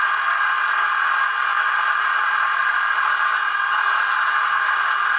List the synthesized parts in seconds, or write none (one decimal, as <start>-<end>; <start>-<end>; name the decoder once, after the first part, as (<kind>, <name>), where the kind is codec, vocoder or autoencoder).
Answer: none